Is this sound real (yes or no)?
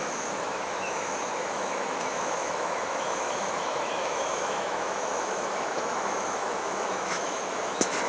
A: no